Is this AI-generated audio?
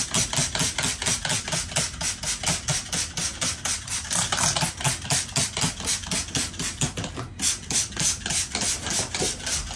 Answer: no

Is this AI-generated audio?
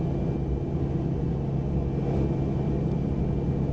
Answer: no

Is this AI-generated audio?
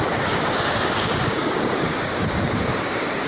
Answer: yes